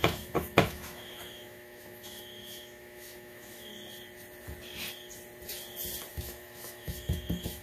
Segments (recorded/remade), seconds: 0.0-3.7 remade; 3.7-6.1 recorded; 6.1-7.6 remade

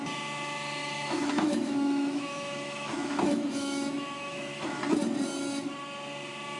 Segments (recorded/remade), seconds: 0.0-0.8 recorded; 0.8-4.8 remade; 4.8-6.6 recorded

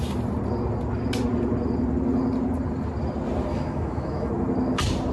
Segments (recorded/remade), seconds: 0.0-3.5 recorded; 3.5-4.3 remade; 4.3-5.1 recorded

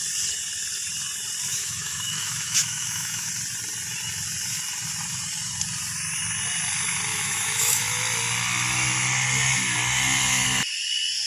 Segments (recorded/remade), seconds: 0.0-1.5 recorded; 1.5-3.3 remade; 3.3-7.1 recorded; 7.1-8.0 remade; 8.0-11.3 recorded

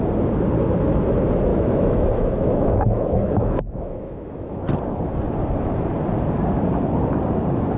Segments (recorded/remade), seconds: 0.0-1.5 recorded; 1.5-4.6 remade; 4.6-7.8 recorded

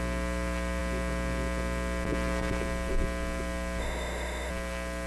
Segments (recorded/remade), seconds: 0.0-3.8 recorded; 3.8-4.5 remade; 4.5-5.1 recorded

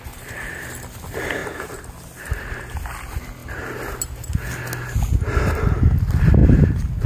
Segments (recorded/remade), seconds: 0.0-7.1 recorded